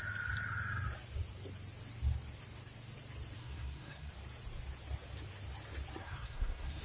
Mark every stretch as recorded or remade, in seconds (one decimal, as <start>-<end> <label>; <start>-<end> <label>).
0.0-3.4 recorded; 3.4-4.1 remade; 4.1-6.0 recorded; 6.0-6.8 remade